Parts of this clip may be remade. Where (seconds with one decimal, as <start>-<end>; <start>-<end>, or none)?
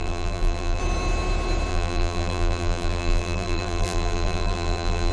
0.0-0.8; 1.7-5.1